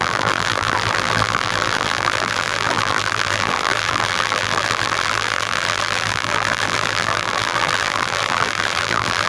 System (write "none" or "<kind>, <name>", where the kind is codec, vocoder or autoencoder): vocoder, BigVGAN v2